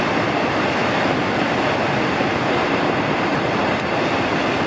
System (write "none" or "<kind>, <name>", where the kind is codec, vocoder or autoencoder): none